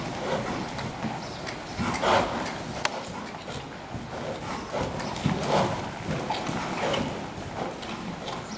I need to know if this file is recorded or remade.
recorded